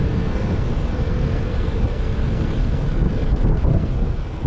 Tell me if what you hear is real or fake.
fake